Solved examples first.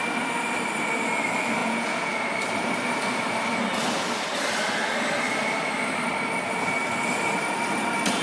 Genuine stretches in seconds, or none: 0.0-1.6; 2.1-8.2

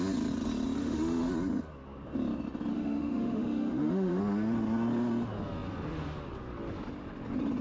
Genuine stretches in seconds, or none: 0.0-0.8; 1.3-2.7; 4.2-7.6

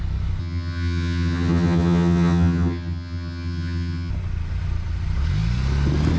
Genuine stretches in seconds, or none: 0.0-0.4; 4.1-6.2

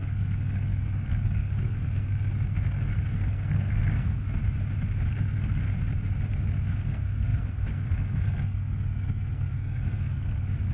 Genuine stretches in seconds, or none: 4.4-5.1; 5.6-6.3

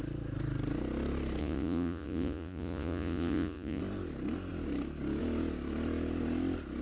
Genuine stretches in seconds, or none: 0.0-1.4; 3.8-6.8